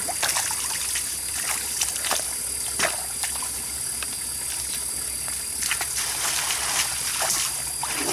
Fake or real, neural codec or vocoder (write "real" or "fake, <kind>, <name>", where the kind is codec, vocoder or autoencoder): real